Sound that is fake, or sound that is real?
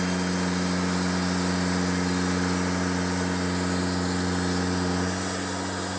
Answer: real